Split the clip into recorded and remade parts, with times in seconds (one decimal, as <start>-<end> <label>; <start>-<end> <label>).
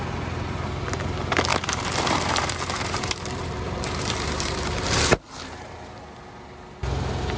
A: 0.0-1.5 recorded; 1.5-5.9 remade; 5.9-7.4 recorded